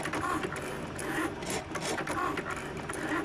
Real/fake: real